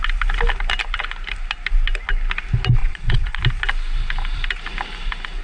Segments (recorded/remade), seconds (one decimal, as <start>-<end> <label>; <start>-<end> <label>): 0.0-2.8 recorded; 2.8-3.4 remade; 3.4-5.4 recorded

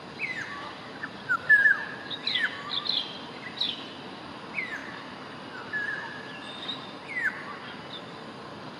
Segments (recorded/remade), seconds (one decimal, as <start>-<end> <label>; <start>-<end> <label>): 0.0-8.8 recorded

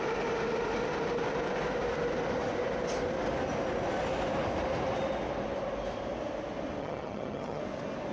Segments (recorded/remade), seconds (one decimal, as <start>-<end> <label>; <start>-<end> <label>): 0.0-6.8 recorded; 6.8-7.6 remade; 7.6-8.1 recorded